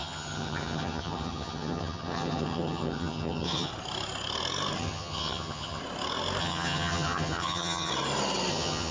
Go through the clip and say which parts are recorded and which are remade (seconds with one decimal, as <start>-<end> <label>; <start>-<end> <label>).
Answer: 0.0-3.7 remade; 3.7-4.8 recorded; 4.8-5.8 remade; 5.8-6.4 recorded; 6.4-7.9 remade; 7.9-8.5 recorded; 8.5-8.9 remade